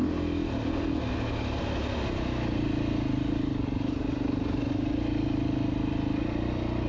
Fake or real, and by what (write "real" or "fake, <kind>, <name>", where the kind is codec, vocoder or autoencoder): real